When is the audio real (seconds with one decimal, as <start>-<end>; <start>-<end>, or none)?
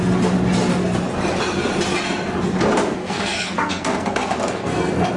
0.0-3.0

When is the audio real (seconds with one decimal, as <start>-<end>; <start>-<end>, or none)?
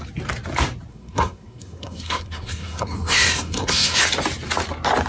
0.0-0.9; 4.0-5.1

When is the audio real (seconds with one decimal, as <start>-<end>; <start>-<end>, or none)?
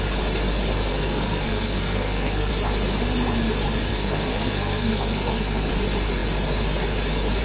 0.0-0.9; 2.5-3.9; 5.7-7.4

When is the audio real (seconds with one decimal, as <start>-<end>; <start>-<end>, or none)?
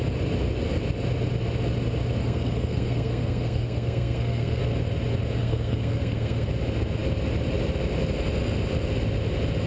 0.0-2.2; 4.6-5.4; 6.5-9.7